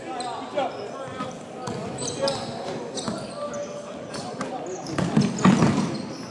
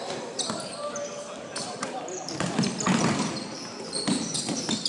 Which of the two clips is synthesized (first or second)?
second